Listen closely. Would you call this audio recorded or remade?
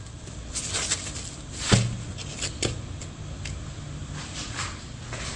recorded